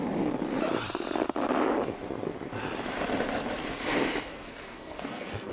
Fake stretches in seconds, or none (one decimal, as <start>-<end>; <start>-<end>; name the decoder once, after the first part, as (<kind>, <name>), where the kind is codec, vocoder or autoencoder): 4.3-5.5 (codec, SNAC)